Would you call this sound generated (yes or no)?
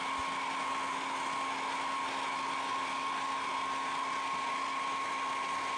no